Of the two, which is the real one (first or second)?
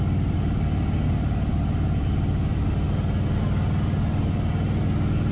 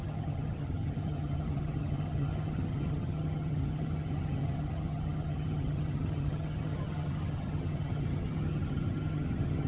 first